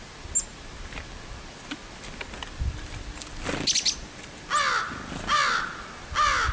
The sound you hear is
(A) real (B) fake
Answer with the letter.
A